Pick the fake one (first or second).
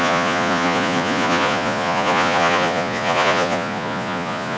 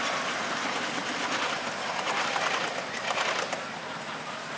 first